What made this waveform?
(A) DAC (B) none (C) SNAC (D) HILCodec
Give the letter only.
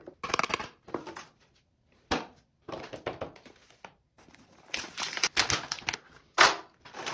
B